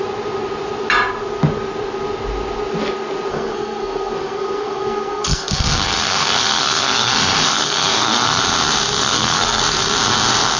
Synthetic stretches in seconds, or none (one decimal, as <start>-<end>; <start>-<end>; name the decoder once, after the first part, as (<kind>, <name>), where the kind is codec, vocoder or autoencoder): 3.3-8.4 (codec, SNAC); 9.0-9.6